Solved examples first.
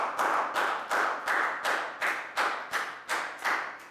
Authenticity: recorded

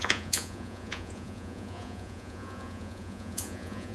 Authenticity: remade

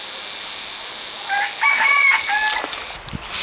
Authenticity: recorded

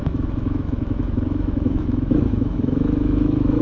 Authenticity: remade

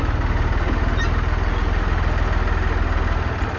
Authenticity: recorded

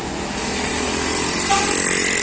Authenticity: recorded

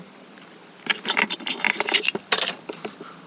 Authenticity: recorded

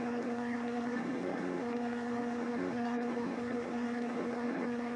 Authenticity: remade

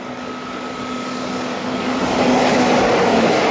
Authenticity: remade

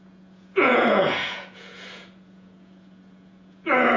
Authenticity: remade